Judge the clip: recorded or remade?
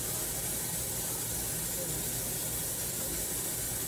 recorded